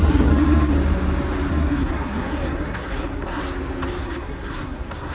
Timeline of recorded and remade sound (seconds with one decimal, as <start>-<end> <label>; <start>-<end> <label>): 0.0-0.7 remade; 0.7-1.5 recorded; 1.5-3.4 remade; 3.4-4.0 recorded; 4.0-5.1 remade